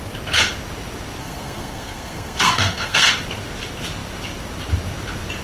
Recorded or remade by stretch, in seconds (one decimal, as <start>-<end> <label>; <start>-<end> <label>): 0.0-1.2 recorded; 1.2-3.1 remade; 3.1-5.4 recorded